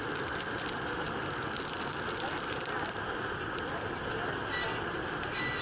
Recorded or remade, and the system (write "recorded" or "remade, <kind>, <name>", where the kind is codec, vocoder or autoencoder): recorded